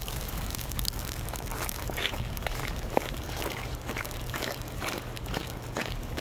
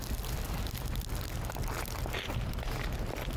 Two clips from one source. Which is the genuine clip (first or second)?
second